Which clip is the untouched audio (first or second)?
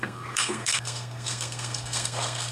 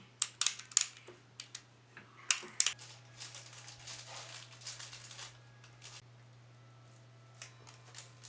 second